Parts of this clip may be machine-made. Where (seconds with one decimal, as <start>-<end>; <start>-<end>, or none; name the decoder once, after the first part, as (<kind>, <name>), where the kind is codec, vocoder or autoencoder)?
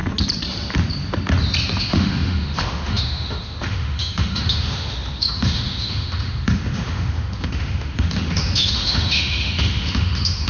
1.8-10.5 (autoencoder, DAC-VAE)